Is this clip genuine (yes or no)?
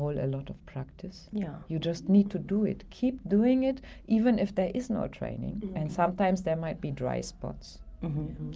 yes